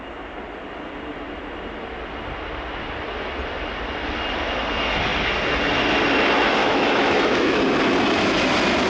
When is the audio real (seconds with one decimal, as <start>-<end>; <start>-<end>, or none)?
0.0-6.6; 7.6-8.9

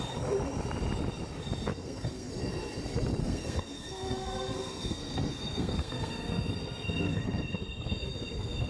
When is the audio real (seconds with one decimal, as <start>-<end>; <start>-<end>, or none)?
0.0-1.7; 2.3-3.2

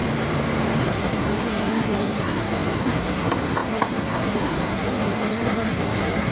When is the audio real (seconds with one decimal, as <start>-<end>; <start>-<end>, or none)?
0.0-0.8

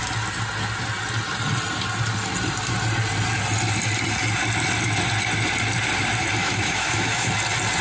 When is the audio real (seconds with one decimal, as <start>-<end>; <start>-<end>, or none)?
0.0-6.4; 7.3-7.8

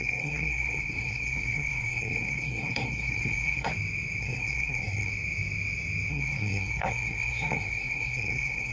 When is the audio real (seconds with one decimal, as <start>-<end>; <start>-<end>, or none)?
3.7-4.2; 5.1-6.1

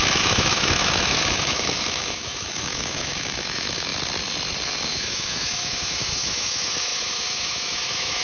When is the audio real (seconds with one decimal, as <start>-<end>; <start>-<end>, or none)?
3.9-4.9

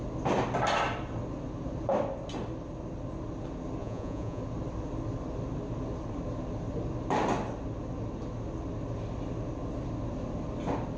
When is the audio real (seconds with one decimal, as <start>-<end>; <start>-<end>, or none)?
0.0-3.8; 4.4-11.0

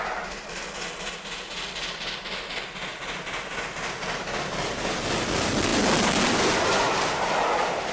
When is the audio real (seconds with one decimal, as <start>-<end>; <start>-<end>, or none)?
0.0-7.9